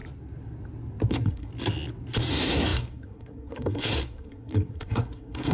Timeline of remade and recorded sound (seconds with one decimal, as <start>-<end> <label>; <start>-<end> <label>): 0.0-1.1 recorded; 1.1-1.5 remade; 1.5-2.3 recorded; 2.3-5.5 remade